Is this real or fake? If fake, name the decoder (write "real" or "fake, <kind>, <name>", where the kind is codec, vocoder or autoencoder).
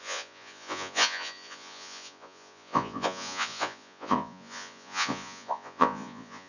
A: fake, vocoder, Vocos